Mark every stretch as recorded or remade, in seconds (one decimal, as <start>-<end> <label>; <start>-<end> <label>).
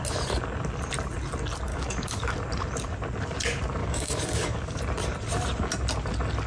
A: 0.0-1.7 recorded; 1.7-2.3 remade; 2.3-3.8 recorded; 3.8-4.8 remade; 4.8-6.5 recorded